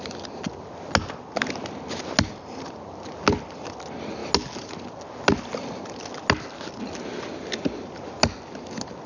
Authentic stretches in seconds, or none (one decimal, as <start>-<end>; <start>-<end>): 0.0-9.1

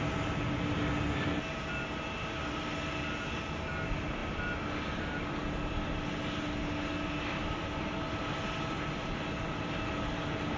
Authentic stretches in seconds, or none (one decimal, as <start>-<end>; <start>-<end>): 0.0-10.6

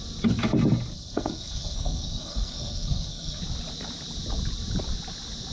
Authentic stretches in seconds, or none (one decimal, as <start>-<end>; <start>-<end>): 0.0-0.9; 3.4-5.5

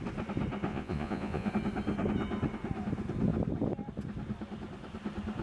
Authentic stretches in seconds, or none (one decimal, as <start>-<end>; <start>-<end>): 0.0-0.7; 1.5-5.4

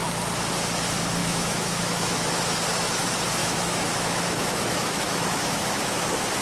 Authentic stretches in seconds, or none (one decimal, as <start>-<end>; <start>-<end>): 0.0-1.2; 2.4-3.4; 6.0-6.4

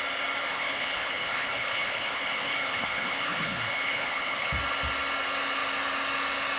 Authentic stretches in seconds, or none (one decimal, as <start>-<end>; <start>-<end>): 0.0-0.5; 4.5-6.6